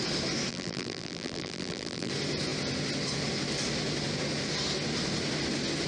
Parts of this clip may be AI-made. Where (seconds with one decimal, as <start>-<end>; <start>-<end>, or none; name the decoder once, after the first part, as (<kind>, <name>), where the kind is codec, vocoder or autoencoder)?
0.5-2.1 (vocoder, BigVGAN v2)